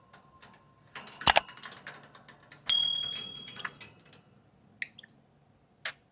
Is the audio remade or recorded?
recorded